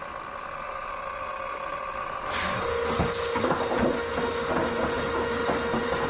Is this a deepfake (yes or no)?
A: no